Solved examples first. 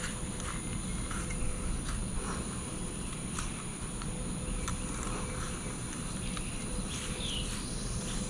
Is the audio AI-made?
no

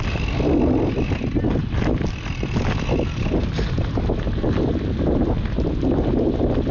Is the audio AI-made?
no